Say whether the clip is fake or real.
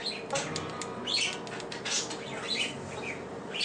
real